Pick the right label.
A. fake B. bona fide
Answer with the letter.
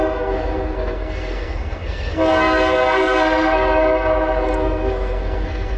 A